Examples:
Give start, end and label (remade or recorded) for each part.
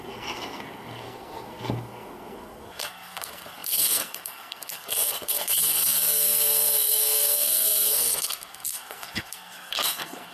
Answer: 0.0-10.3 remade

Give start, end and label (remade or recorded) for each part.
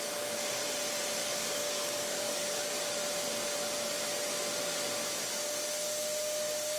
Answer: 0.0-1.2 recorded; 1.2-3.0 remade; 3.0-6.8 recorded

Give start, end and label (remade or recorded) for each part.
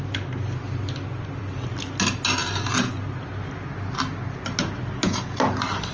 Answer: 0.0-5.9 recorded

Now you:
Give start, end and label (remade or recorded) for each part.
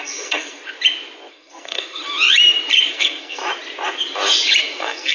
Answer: 0.0-0.6 remade; 0.6-1.3 recorded; 1.3-2.0 remade; 2.0-2.9 recorded; 2.9-3.4 remade; 3.4-4.6 recorded; 4.6-5.1 remade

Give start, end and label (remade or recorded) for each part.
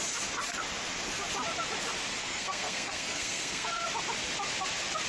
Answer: 0.0-2.2 recorded; 2.2-3.8 remade; 3.8-5.1 recorded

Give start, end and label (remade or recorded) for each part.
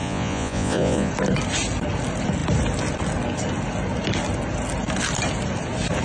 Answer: 0.0-1.1 remade; 1.1-6.0 recorded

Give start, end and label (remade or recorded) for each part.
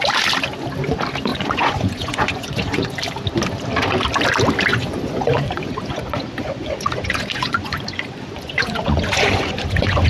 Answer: 0.0-1.3 recorded; 1.3-3.0 remade; 3.0-4.7 recorded; 4.7-10.1 remade